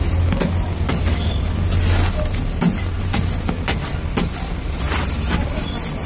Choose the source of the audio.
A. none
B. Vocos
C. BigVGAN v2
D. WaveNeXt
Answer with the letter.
A